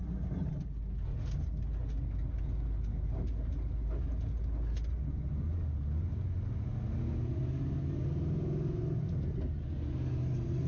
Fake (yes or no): no